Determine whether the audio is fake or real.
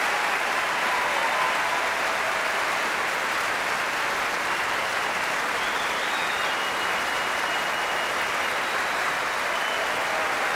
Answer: real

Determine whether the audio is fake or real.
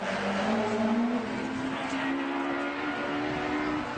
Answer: real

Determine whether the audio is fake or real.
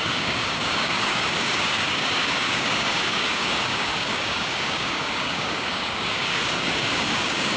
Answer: fake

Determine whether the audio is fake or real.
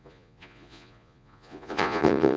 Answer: fake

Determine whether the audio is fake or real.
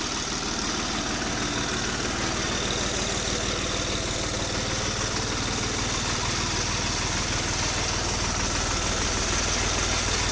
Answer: real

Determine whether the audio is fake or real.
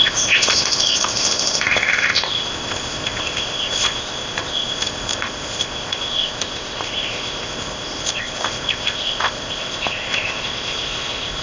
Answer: fake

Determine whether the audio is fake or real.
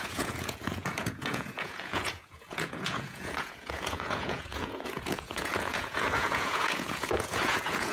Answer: fake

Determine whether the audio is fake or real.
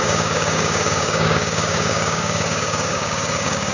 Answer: fake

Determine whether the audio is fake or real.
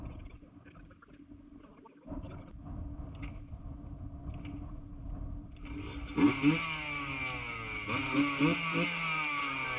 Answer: real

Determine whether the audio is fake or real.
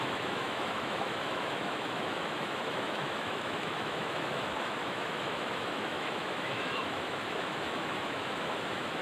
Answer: fake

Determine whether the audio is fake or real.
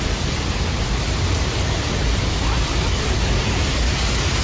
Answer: real